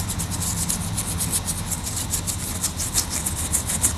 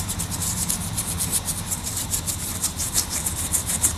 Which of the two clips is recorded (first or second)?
first